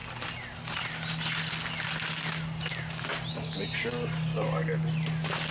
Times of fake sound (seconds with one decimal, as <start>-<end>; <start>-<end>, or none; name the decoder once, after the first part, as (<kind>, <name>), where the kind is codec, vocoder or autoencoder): none